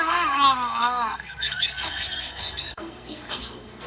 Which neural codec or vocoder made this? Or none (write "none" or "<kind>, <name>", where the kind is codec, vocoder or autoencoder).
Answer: codec, SNAC